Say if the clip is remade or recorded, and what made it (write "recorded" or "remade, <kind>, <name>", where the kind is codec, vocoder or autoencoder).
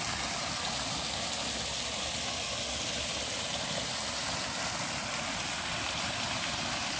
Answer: recorded